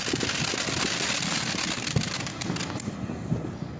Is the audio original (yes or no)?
yes